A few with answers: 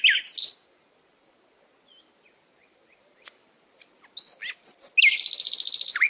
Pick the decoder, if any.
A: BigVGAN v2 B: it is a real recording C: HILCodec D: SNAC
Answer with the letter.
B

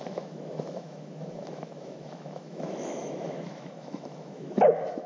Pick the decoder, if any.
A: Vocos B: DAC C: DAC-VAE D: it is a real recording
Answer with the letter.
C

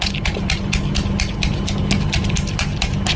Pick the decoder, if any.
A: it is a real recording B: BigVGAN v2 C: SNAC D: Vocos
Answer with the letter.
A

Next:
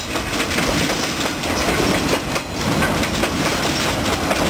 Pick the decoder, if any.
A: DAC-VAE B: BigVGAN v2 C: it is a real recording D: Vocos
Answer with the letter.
C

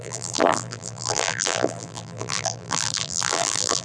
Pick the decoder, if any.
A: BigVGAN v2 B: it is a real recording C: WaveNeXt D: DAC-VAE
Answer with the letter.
A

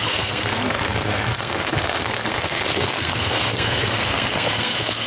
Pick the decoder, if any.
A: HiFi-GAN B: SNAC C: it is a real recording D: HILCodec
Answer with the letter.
B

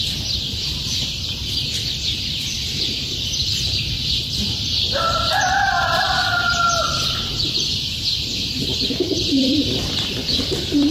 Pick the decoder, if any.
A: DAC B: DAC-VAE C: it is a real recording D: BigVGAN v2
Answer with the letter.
D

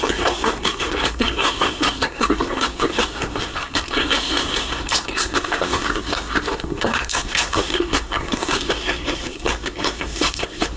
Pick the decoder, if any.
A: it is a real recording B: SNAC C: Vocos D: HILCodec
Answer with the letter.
B